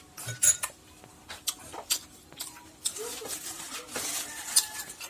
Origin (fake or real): real